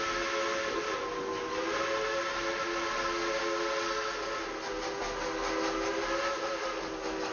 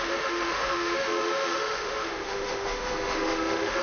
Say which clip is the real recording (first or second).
first